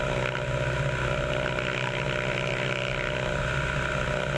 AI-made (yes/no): no